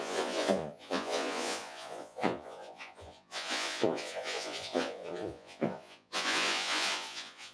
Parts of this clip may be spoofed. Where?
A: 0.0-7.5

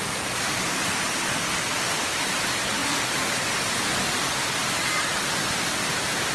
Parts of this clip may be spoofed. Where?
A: none

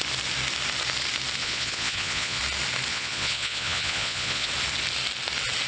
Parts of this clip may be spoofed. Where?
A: 1.4-2.4; 2.9-4.5

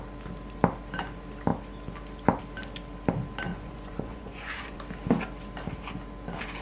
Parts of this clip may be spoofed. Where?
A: 3.5-4.8

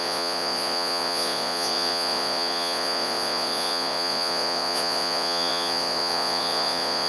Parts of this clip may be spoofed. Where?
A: 0.0-7.1

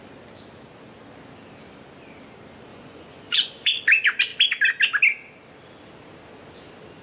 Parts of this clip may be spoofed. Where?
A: 2.7-3.8

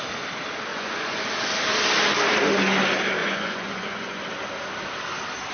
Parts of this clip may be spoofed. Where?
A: 0.7-1.2; 3.2-4.2

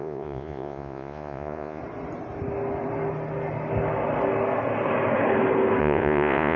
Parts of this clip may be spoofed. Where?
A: 0.0-1.8; 5.8-6.6